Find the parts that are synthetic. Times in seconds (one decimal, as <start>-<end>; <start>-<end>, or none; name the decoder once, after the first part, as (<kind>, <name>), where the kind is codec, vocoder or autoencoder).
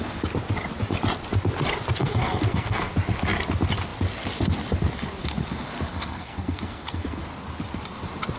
2.0-2.9 (codec, SNAC); 5.9-7.2